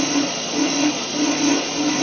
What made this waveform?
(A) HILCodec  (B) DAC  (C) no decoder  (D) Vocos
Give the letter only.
D